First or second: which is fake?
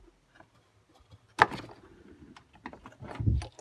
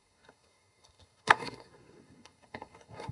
second